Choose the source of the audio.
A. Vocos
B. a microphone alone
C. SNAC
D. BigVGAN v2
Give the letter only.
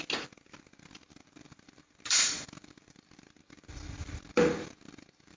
B